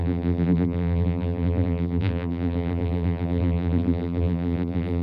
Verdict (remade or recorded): remade